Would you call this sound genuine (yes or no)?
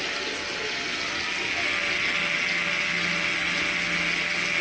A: yes